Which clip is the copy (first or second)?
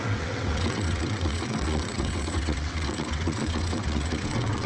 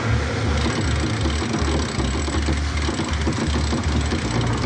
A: first